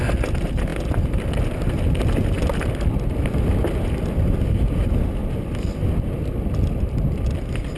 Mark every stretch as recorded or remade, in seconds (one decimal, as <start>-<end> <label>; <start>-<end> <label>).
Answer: 0.0-7.8 recorded